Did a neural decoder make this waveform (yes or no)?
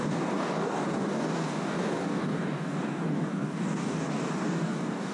yes